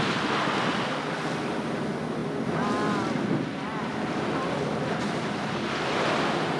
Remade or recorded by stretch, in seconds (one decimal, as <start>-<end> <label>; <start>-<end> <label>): 0.0-6.6 recorded